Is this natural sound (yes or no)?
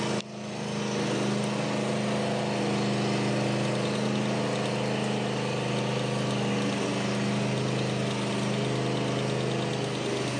yes